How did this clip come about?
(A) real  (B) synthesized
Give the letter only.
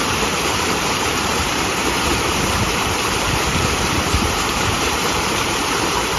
B